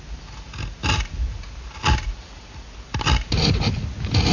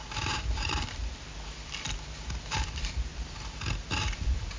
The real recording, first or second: first